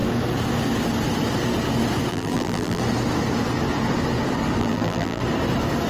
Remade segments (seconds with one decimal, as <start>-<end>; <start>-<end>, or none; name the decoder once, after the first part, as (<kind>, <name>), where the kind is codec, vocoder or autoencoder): 2.1-2.8 (vocoder, BigVGAN v2); 4.6-5.2